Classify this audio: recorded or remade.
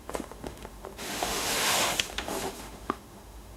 remade